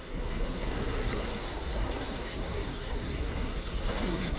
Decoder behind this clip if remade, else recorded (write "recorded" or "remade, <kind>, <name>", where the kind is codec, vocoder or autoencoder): remade, codec, SNAC